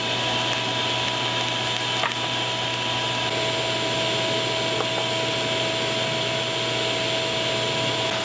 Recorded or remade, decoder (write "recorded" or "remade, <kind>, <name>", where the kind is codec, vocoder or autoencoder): recorded